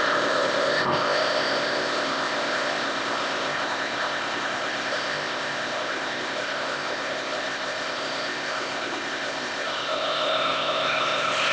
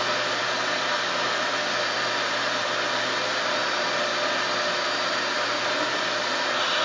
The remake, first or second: first